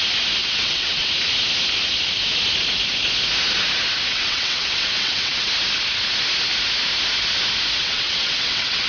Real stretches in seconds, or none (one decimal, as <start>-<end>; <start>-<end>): 0.0-0.4; 1.1-4.1; 5.5-7.8